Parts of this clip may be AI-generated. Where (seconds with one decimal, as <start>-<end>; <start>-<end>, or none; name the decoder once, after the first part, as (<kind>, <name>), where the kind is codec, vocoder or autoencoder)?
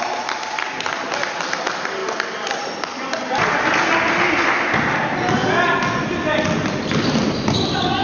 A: none